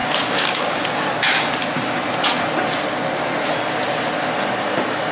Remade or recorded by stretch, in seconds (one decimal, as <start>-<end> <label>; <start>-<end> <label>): 0.0-0.8 remade; 0.8-5.1 recorded